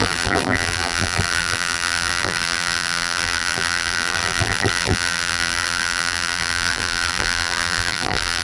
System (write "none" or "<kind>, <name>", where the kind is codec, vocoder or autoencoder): vocoder, BigVGAN v2